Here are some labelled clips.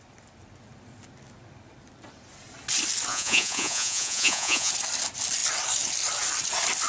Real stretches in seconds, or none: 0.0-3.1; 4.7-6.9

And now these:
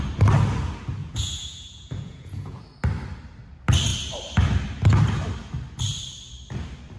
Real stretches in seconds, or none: 0.0-1.0; 2.6-7.0

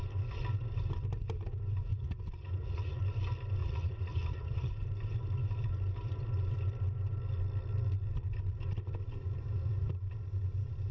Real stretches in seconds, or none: 0.0-1.9; 3.0-3.6; 4.7-10.9

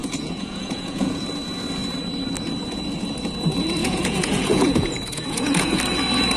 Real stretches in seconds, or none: 1.2-3.8; 5.8-6.4